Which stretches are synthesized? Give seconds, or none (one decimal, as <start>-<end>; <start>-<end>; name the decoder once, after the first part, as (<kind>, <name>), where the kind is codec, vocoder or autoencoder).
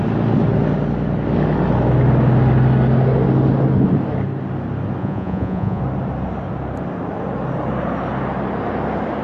5.0-5.8 (vocoder, Vocos)